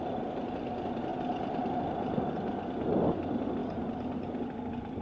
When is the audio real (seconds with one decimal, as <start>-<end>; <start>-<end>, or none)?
0.0-5.0